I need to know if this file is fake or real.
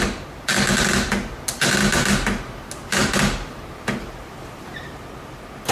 real